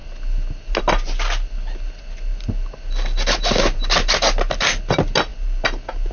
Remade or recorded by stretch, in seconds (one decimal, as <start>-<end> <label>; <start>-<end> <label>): 0.0-6.1 recorded